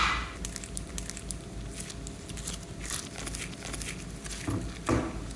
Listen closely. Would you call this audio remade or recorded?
recorded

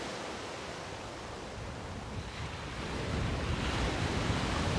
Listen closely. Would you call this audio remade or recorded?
recorded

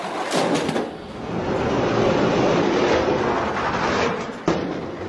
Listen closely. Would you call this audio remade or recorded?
recorded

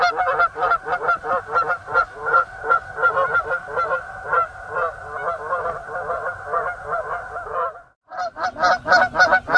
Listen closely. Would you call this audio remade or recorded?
recorded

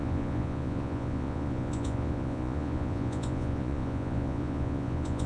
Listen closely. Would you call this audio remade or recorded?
remade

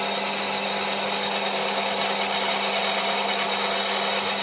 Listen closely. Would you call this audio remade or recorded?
recorded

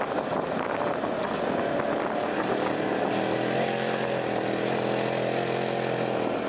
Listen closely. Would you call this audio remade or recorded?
recorded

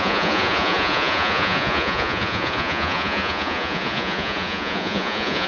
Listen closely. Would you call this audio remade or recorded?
remade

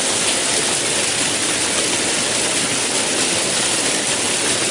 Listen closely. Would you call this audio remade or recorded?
recorded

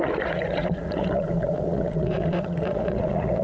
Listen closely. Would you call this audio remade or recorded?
remade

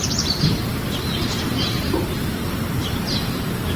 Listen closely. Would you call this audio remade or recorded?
recorded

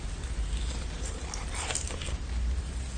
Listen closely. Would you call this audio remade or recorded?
recorded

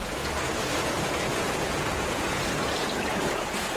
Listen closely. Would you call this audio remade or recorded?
remade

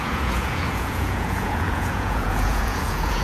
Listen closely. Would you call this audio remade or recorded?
remade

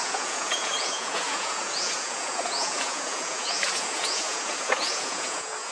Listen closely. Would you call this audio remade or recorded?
remade